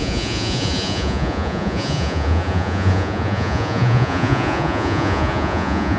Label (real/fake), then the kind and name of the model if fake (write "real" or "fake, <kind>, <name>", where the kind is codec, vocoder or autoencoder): fake, vocoder, Vocos